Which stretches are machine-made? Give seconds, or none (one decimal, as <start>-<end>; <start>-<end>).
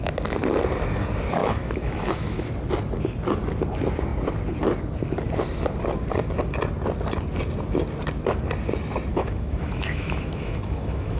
1.4-2.5; 9.1-11.2